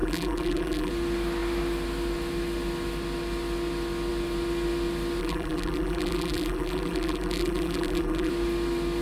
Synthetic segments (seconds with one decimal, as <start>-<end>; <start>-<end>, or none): 0.0-0.9; 5.2-8.3